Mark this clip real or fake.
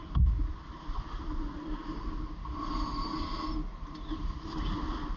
real